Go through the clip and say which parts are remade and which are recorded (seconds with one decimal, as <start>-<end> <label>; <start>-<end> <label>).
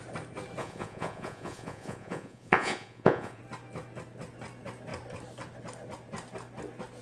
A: 0.0-0.6 recorded; 0.6-3.4 remade; 3.4-7.0 recorded